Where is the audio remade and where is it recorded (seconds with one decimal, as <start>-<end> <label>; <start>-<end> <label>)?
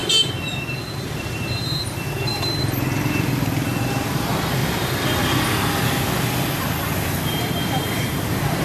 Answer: 0.0-2.3 remade; 2.3-3.2 recorded; 3.2-8.6 remade